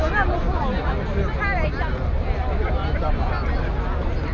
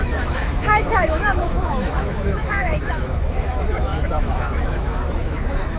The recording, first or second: first